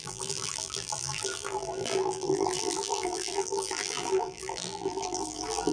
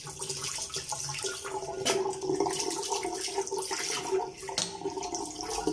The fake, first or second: first